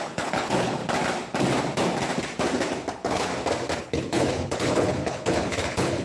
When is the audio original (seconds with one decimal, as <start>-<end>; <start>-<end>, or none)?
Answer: 0.8-2.9; 3.3-3.8